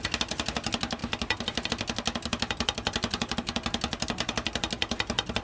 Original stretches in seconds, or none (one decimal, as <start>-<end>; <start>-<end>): 0.0-5.4

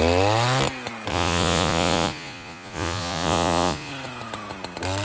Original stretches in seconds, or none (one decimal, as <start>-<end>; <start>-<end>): 0.0-1.1; 3.9-5.0

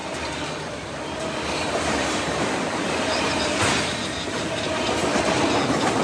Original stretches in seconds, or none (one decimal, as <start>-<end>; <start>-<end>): 0.0-6.0

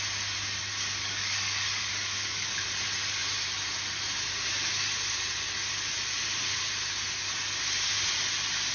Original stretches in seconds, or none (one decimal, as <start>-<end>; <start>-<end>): 0.0-1.0; 2.6-8.7

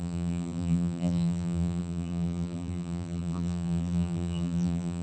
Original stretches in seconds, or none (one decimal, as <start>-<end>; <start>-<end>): none

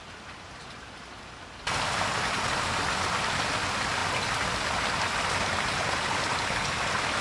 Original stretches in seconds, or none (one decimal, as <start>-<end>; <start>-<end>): 0.0-7.2